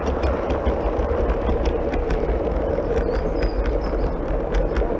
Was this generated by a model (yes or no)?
no